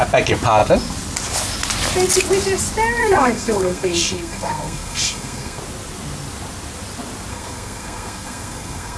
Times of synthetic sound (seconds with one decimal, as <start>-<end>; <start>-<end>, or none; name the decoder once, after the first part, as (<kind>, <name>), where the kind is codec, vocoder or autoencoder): 3.0-5.6 (codec, SNAC); 7.3-9.0